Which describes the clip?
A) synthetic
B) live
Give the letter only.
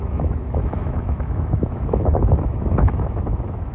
A